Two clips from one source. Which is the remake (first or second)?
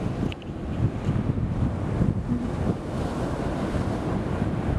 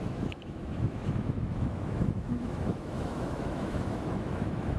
second